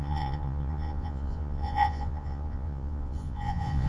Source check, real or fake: fake